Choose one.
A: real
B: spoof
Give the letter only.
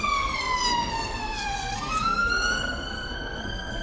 B